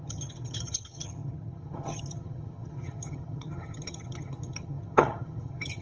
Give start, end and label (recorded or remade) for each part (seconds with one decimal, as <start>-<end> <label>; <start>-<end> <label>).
0.0-5.8 remade